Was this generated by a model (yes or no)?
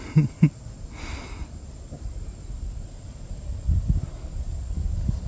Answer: no